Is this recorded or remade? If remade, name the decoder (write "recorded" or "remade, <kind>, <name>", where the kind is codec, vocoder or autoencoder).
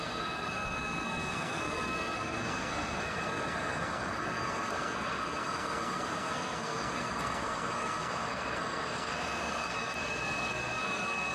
remade, codec, SNAC